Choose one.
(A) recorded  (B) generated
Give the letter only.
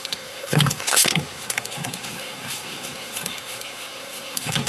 B